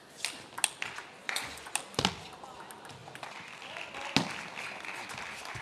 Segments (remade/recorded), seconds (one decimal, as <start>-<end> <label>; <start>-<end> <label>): 0.0-1.2 recorded; 1.2-1.7 remade; 1.7-5.6 recorded